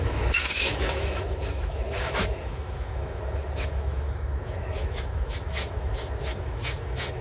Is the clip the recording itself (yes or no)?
no